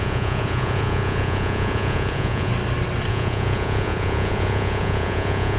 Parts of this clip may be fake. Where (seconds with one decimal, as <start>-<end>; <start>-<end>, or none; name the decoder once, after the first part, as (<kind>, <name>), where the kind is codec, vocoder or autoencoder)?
0.0-2.5 (vocoder, Vocos); 3.1-5.6